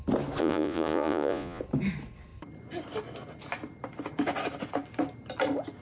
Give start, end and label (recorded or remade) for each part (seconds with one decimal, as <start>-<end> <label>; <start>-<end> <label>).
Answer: 0.0-0.4 recorded; 0.4-1.6 remade; 1.6-5.8 recorded